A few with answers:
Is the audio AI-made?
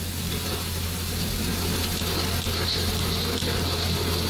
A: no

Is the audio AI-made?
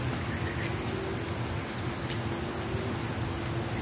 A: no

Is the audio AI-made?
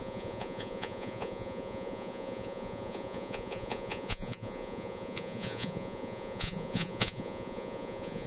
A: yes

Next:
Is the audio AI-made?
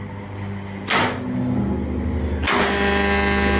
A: no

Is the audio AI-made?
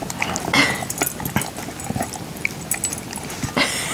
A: no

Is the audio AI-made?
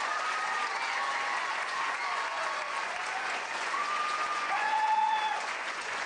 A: yes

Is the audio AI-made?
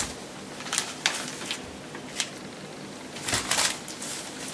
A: no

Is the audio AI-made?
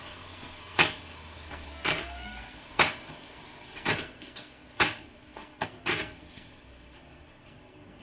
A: yes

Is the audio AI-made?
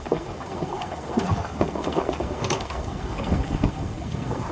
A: yes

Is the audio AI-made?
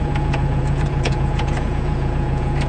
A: yes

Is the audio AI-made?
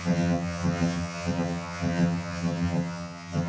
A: yes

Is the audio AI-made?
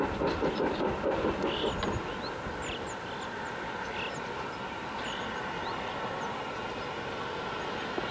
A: no